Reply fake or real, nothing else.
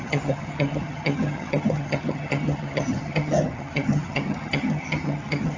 fake